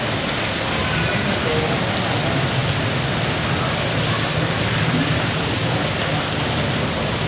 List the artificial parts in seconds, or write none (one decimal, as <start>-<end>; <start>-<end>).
none

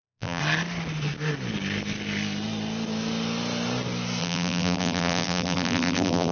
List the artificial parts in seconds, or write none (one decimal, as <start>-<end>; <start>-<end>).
0.0-0.4; 4.2-6.3

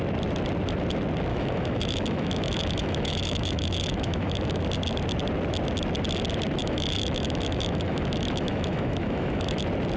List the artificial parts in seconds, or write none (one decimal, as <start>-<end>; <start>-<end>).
1.3-4.6; 6.6-9.6

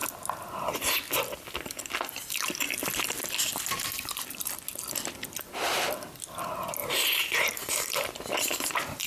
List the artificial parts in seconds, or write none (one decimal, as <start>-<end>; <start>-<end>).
6.8-8.1

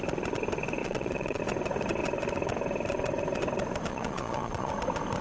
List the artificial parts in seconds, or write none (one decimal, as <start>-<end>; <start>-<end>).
0.8-1.4; 3.9-4.7

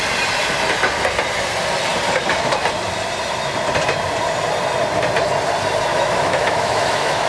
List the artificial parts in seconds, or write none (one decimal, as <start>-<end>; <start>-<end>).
5.9-7.3

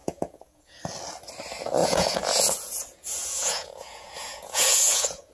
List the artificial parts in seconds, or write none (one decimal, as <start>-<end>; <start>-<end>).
0.0-0.8; 1.8-5.3